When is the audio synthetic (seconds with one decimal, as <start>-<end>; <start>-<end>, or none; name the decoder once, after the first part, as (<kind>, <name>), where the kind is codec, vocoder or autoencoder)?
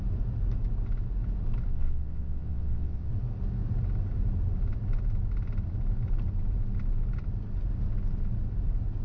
1.7-3.1 (vocoder, WaveNeXt)